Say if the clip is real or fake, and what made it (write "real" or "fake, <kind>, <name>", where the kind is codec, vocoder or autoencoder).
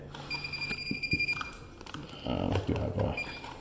real